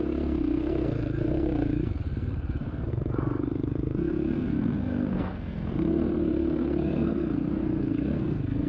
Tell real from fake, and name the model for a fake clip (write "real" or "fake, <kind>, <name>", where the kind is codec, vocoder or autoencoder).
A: fake, codec, SNAC